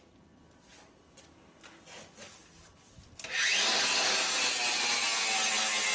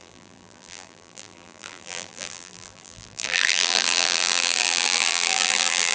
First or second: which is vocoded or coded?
second